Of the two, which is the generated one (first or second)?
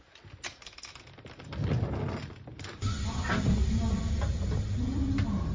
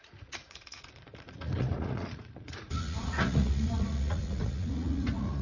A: second